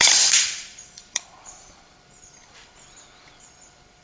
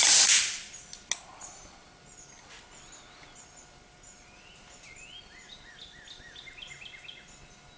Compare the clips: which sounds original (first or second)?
second